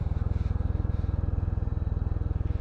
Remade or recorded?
recorded